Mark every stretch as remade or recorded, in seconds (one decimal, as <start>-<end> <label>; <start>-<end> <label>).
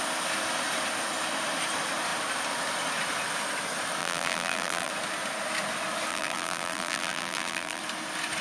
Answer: 0.0-4.0 recorded; 4.0-4.9 remade; 4.9-6.1 recorded; 6.1-7.8 remade; 7.8-8.4 recorded